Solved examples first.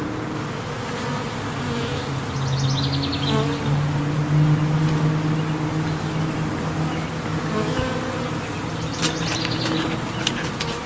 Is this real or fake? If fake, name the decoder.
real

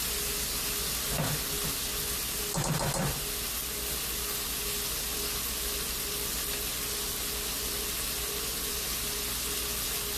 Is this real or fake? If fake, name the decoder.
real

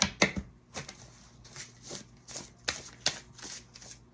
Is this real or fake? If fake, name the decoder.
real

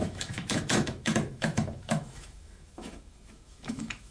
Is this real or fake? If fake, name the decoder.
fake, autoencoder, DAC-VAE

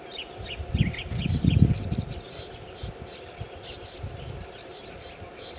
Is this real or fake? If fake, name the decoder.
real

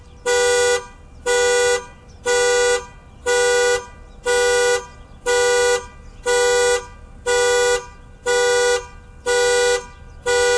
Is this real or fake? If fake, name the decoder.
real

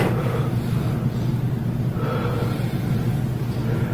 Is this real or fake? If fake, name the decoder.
real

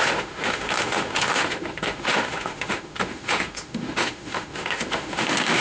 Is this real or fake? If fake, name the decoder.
fake, autoencoder, DAC-VAE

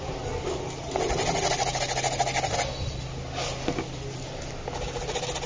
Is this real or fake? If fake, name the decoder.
real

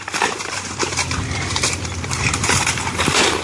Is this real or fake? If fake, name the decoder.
fake, vocoder, BigVGAN v2